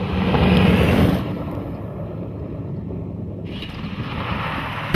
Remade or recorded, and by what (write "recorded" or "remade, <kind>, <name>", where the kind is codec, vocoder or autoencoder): recorded